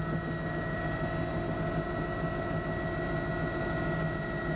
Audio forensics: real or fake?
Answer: real